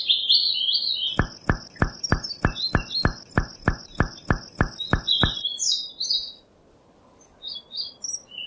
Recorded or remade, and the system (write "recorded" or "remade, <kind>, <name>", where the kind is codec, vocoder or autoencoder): recorded